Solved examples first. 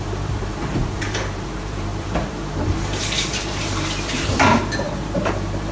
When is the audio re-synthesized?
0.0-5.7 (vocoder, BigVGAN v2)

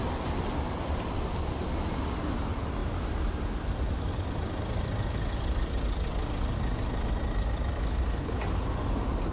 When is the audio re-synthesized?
none